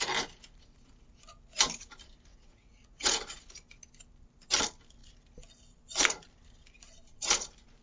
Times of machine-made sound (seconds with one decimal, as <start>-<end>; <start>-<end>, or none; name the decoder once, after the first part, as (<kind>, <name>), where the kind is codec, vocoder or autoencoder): 2.3-3.4 (vocoder, Vocos)